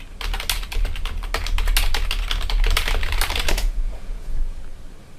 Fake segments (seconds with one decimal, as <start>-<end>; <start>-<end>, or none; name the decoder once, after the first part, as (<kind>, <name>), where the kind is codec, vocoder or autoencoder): 3.6-4.6 (vocoder, Vocos)